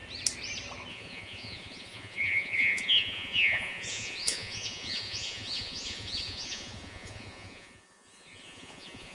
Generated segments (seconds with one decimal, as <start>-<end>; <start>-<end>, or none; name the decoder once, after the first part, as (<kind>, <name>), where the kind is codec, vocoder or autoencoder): 0.9-9.1 (vocoder, Vocos)